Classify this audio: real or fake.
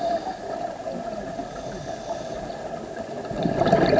real